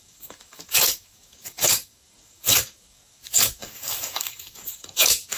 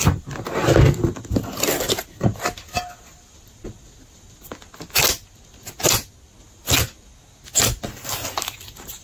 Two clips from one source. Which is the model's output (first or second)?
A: first